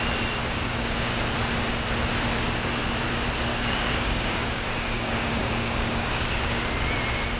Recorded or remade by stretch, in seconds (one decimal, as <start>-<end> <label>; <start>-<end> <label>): 0.0-0.4 recorded; 0.4-1.2 remade; 1.2-3.5 recorded; 3.5-6.6 remade; 6.6-7.4 recorded

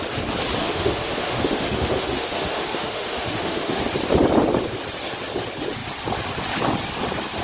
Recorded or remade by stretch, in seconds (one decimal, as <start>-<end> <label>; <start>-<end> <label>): 0.0-0.6 recorded; 0.6-3.8 remade; 3.8-7.4 recorded

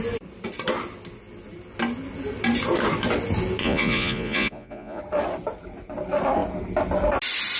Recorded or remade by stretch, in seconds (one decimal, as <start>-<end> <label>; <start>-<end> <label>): 0.0-3.6 recorded; 3.6-5.0 remade; 5.0-7.6 recorded

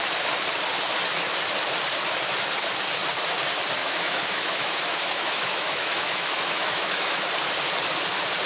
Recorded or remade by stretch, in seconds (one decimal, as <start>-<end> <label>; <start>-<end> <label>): 0.0-3.8 recorded; 3.8-7.3 remade; 7.3-8.5 recorded